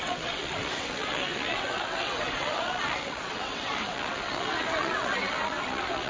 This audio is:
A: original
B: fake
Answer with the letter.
B